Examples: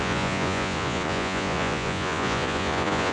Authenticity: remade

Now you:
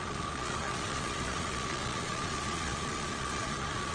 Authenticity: remade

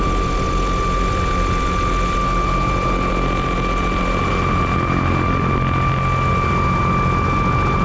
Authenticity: recorded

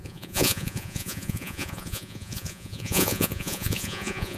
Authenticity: remade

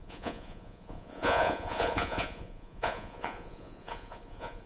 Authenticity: remade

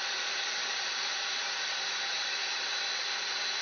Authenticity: recorded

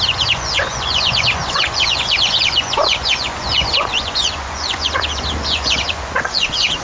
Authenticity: remade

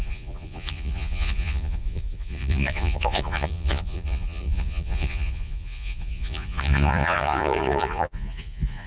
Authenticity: remade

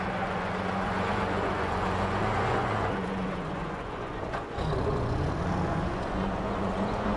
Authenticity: remade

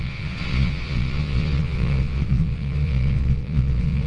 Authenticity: remade